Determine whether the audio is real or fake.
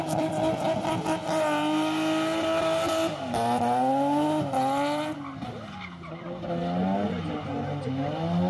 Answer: real